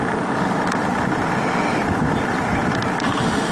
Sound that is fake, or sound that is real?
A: real